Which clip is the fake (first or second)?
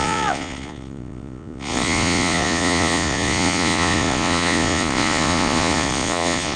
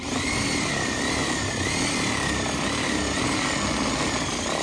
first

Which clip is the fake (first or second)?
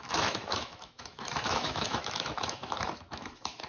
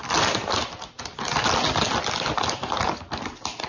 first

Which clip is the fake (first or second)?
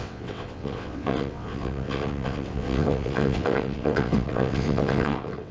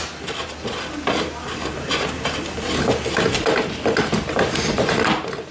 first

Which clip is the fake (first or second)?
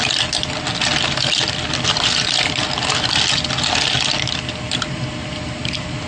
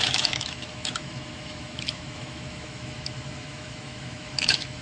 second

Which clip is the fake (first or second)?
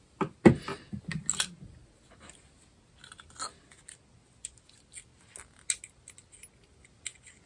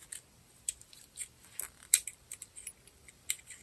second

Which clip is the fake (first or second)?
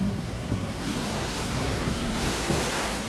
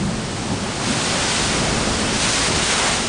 first